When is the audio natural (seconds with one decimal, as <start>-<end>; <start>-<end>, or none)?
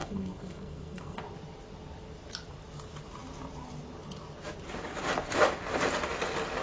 1.2-6.6